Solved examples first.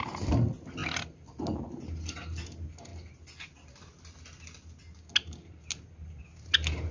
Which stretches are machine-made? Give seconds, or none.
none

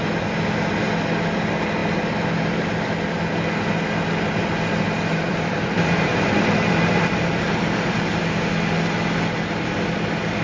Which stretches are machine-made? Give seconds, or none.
4.4-8.5 (vocoder, BigVGAN v2)

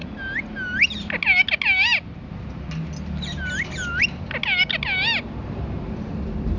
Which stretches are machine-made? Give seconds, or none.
none

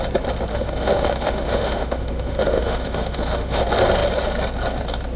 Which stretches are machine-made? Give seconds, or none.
0.5-3.6 (autoencoder, DAC-VAE)

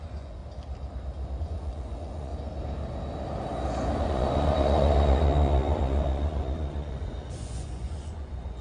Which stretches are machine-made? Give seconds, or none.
0.0-0.4 (vocoder, Vocos); 1.4-2.3; 4.0-8.6